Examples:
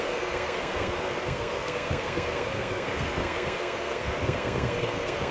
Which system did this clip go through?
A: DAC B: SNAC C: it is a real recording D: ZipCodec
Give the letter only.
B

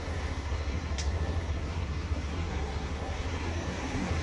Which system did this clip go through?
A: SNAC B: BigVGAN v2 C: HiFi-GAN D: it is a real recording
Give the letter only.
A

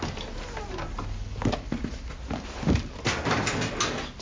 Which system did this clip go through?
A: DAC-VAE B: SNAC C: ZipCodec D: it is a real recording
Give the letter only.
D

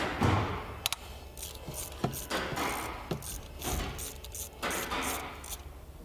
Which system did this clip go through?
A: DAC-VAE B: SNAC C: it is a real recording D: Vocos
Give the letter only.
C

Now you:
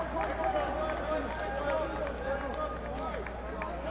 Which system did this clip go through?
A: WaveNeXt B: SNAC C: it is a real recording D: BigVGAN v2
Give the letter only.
C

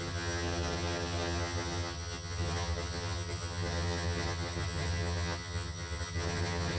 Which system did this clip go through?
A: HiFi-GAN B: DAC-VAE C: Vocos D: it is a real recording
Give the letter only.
A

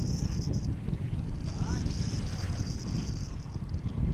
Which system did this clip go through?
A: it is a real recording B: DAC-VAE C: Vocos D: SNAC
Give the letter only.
A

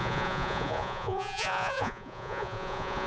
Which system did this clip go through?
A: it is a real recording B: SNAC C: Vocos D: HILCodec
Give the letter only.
C